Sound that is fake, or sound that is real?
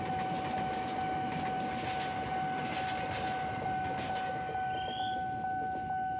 real